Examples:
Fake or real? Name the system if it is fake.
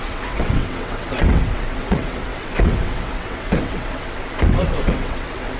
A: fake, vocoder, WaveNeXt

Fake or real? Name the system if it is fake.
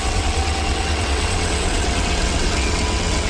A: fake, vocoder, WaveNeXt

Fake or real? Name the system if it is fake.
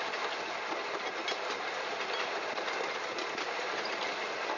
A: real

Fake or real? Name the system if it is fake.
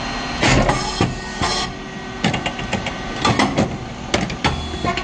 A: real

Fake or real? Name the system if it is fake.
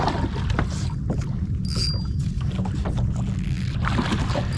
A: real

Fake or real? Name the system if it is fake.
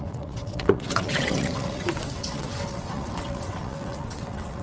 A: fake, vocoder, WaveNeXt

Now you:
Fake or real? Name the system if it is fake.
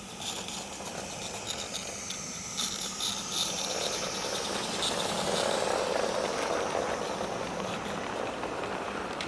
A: real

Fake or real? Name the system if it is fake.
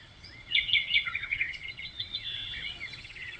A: fake, vocoder, WaveNeXt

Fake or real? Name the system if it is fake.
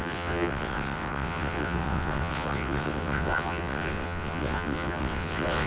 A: fake, vocoder, WaveNeXt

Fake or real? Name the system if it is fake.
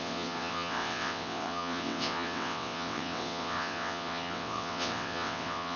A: fake, vocoder, WaveNeXt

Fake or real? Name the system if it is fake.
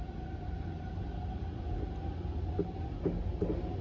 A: real